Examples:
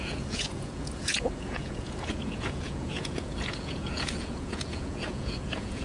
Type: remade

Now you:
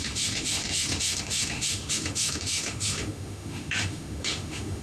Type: remade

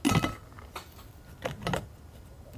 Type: recorded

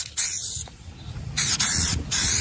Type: remade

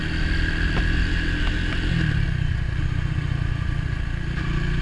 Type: recorded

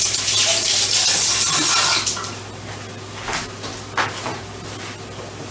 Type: recorded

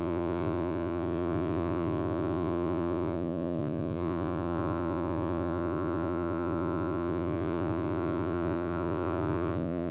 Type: remade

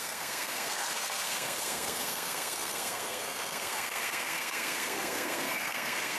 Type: remade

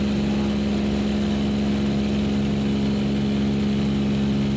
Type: recorded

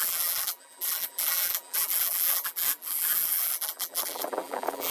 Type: remade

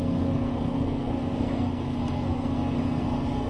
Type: remade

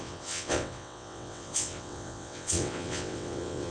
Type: remade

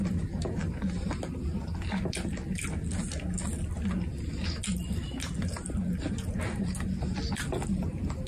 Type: recorded